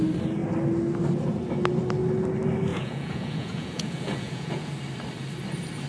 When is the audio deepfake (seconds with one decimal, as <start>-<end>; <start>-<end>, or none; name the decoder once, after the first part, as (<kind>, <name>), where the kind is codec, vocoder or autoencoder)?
2.7-4.7 (vocoder, Vocos)